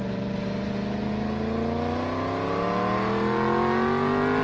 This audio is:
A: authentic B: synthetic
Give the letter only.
A